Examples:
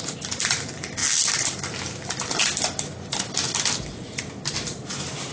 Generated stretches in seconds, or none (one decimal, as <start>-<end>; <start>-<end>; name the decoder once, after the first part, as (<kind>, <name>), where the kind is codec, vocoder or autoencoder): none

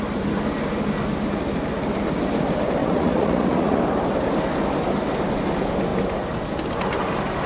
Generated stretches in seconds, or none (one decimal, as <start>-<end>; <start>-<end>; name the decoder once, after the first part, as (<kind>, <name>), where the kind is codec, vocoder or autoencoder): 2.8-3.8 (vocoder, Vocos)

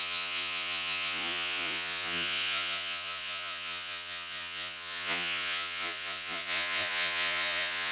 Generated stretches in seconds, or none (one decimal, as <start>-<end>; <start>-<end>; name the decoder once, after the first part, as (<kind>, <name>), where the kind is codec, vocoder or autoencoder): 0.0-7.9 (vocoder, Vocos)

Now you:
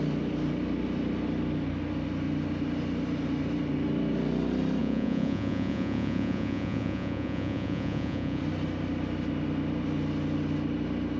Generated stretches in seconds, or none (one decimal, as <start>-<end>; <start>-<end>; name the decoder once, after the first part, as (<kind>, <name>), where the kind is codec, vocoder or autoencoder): 4.8-8.4 (vocoder, Vocos)

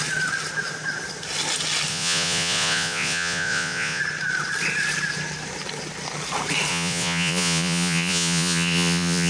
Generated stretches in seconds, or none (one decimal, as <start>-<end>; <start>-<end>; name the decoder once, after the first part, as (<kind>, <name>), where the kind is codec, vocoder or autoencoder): 1.9-4.0 (vocoder, Vocos); 6.7-9.3

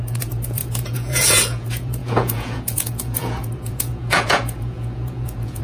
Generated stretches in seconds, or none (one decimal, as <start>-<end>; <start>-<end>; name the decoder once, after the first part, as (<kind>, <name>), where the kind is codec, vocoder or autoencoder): 0.0-5.6 (vocoder, Vocos)

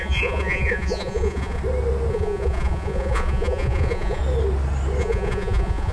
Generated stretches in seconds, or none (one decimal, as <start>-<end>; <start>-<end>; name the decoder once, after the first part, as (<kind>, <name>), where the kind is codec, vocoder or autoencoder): 0.0-1.6 (vocoder, Vocos); 2.1-4.2; 5.0-5.9

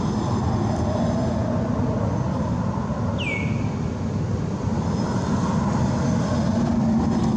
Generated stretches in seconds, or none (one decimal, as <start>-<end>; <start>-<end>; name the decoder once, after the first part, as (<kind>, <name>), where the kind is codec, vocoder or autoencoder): none